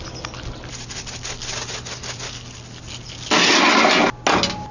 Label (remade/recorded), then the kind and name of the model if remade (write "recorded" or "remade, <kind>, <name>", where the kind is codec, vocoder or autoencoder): recorded